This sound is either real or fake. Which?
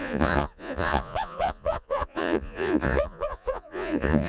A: fake